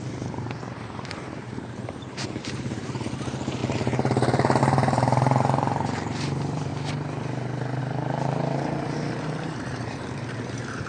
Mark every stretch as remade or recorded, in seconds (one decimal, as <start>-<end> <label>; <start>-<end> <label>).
0.0-6.7 remade; 6.7-7.8 recorded; 7.8-10.9 remade